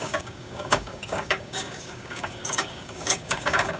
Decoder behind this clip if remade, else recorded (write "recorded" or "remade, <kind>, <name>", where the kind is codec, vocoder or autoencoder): remade, codec, DAC